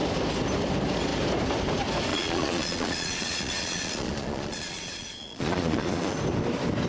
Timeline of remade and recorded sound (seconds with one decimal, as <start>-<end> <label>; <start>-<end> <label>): 0.0-2.1 recorded; 2.1-6.2 remade; 6.2-6.9 recorded